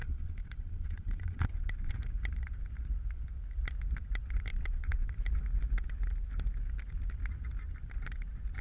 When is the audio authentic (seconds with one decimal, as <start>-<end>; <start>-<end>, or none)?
1.9-4.5; 5.1-8.6